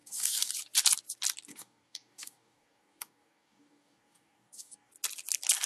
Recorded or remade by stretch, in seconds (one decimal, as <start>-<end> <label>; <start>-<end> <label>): 0.0-0.5 remade; 0.5-1.5 recorded; 1.5-4.9 remade; 4.9-5.7 recorded